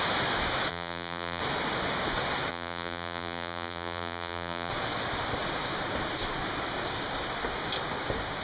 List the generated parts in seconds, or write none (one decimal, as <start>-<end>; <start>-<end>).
0.7-1.4; 2.5-4.7

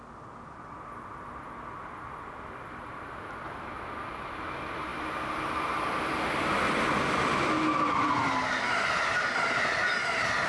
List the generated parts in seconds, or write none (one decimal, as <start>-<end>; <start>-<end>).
none

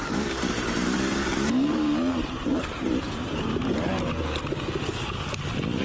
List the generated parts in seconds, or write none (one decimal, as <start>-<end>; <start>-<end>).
0.0-3.5

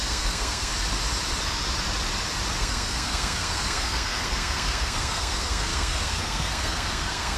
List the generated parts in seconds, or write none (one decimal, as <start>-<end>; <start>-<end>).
0.0-0.7; 2.6-7.4

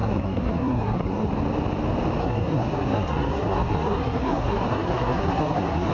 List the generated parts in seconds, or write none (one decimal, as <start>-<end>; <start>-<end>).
0.0-1.3; 2.2-5.9

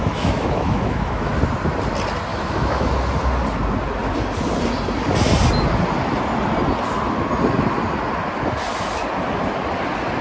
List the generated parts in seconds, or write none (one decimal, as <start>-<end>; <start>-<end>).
0.0-1.3; 2.3-2.9

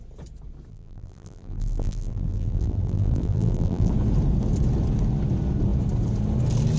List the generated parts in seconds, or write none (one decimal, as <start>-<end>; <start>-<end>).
0.7-3.9

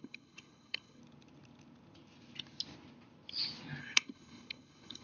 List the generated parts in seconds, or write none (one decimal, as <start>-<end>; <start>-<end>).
0.0-1.0; 3.8-5.0